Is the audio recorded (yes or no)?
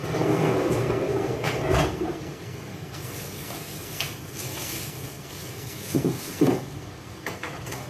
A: no